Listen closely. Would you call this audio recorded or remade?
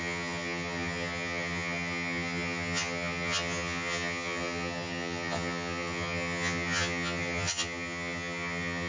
remade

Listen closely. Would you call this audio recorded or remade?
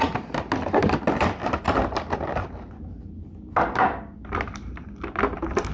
recorded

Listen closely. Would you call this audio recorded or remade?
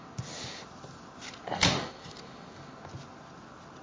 recorded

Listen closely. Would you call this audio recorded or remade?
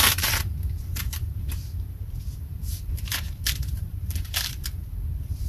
remade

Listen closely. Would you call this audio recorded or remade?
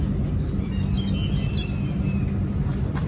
recorded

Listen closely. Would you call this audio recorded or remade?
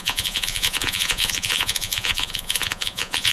remade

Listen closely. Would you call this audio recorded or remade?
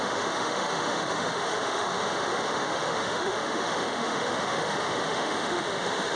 remade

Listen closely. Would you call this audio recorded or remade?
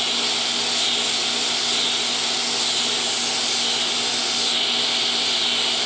recorded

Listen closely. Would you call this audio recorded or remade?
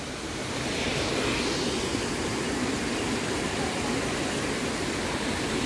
recorded